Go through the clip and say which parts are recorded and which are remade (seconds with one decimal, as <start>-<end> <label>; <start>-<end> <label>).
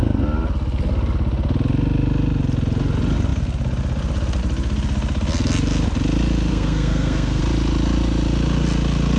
0.0-6.5 recorded; 6.5-7.4 remade; 7.4-9.2 recorded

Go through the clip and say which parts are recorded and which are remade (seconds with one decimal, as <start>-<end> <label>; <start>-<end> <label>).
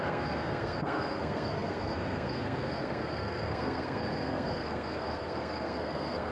0.0-6.3 remade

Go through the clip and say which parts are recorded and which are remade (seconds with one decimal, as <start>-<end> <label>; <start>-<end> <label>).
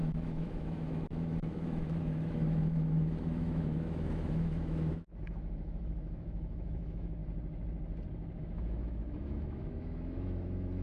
0.0-7.2 remade; 7.2-8.4 recorded; 8.4-10.8 remade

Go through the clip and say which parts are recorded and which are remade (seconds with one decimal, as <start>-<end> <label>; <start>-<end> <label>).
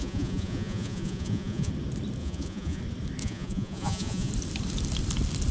0.0-1.7 remade; 1.7-2.2 recorded; 2.2-2.8 remade; 2.8-3.2 recorded; 3.2-4.3 remade; 4.3-5.5 recorded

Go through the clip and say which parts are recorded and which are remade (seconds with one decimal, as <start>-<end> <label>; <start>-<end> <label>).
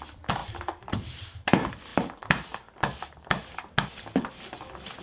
0.0-5.0 recorded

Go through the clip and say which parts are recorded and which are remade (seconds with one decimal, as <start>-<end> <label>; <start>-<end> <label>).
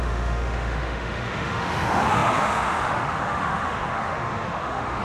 0.0-5.0 remade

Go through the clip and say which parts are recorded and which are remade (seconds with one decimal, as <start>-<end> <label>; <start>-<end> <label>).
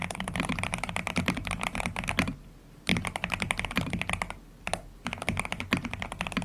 0.0-1.8 remade; 1.8-6.4 recorded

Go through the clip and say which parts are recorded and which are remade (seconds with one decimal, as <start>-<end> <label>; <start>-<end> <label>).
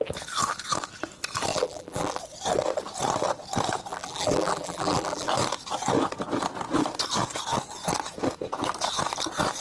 0.0-1.5 recorded; 1.5-2.2 remade; 2.2-3.9 recorded; 3.9-5.3 remade; 5.3-9.6 recorded